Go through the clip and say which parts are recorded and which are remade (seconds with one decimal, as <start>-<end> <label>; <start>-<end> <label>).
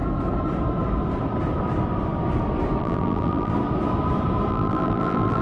0.0-2.8 recorded; 2.8-3.5 remade; 3.5-4.5 recorded; 4.5-5.4 remade